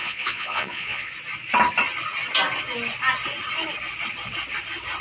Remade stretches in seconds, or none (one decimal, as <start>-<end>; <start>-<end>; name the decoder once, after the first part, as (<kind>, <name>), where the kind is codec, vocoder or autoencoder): 0.0-1.1 (vocoder, Vocos)